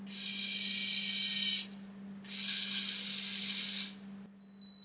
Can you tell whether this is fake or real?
real